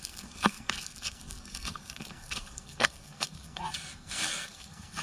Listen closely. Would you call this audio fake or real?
fake